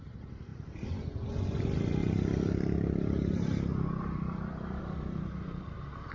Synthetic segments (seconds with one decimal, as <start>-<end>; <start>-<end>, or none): 0.5-1.3; 2.0-6.1